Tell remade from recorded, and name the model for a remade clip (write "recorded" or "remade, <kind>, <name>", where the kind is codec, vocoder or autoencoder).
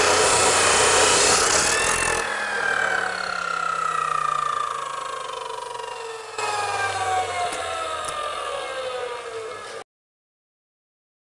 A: recorded